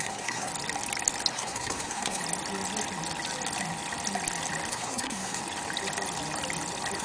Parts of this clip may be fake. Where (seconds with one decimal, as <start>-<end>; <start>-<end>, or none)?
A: 0.0-0.5; 1.3-2.2; 4.7-5.4